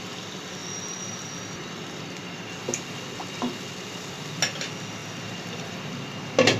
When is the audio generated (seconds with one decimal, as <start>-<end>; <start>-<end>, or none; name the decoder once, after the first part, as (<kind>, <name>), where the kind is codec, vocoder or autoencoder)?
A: none